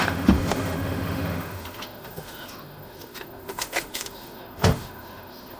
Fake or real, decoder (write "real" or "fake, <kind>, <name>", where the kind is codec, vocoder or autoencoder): fake, autoencoder, DAC-VAE